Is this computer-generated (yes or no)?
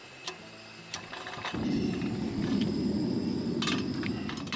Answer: no